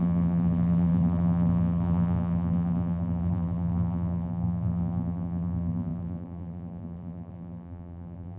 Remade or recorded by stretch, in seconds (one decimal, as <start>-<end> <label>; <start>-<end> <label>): 0.0-8.4 remade